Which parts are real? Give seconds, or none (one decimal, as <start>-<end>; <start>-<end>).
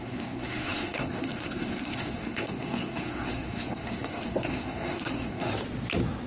5.5-6.3